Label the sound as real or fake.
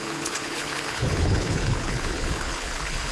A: fake